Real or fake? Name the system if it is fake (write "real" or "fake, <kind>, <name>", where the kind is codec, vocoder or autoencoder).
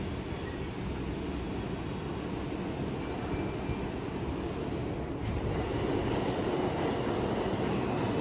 real